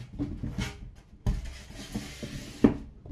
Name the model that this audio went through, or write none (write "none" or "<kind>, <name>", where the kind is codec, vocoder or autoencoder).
none